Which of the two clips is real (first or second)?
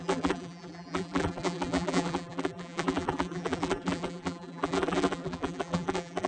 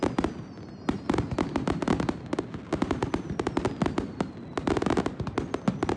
second